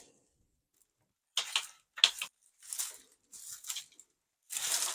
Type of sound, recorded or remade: recorded